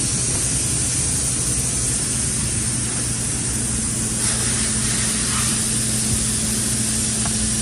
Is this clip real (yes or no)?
yes